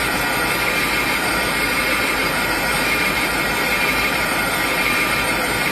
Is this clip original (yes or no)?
no